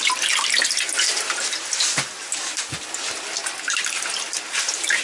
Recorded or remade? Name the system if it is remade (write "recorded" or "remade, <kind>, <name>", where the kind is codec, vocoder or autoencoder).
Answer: recorded